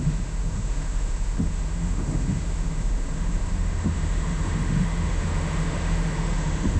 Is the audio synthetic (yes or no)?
yes